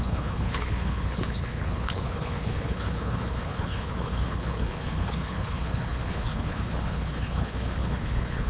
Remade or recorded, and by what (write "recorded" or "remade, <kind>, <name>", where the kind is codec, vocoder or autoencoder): remade, codec, HILCodec